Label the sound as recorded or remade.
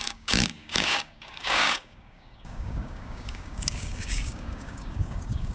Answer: remade